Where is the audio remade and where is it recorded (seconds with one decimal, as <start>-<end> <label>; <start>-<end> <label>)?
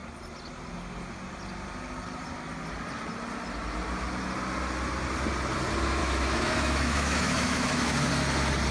0.0-6.0 recorded; 6.0-8.1 remade; 8.1-8.7 recorded